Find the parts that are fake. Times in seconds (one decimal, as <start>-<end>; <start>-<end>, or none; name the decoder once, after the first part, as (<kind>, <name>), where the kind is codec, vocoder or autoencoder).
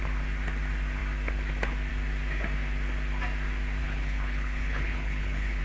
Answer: 3.8-5.6 (codec, HILCodec)